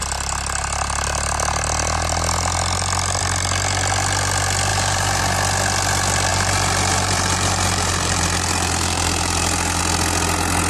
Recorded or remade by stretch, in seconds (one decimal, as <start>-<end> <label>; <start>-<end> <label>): 0.0-4.7 recorded; 4.7-5.2 remade; 5.2-6.3 recorded; 6.3-9.8 remade; 9.8-10.7 recorded